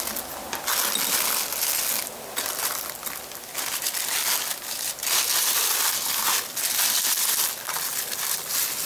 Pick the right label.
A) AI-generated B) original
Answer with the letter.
B